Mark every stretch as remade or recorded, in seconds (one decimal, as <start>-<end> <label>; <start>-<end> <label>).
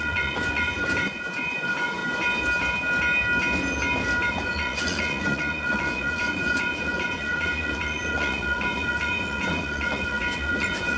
0.0-2.0 remade; 2.0-4.3 recorded; 4.3-11.0 remade